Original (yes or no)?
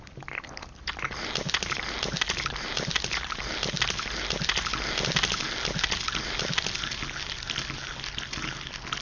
yes